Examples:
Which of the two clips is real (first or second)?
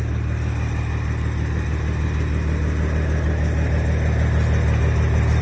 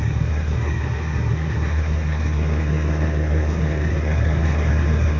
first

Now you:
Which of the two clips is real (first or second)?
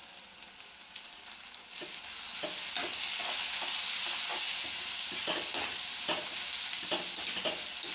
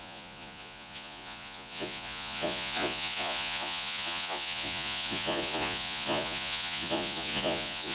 first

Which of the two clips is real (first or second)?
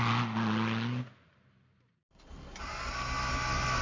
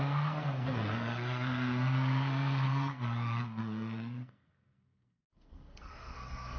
first